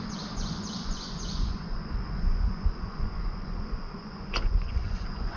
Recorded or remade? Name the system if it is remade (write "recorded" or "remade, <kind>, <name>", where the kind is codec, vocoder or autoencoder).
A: remade, vocoder, Vocos